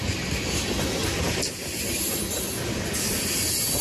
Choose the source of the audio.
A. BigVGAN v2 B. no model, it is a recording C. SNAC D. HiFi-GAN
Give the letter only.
B